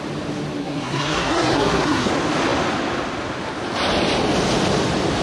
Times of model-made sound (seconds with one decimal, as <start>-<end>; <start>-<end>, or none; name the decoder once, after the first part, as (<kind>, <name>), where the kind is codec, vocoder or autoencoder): 0.6-2.1 (codec, SNAC)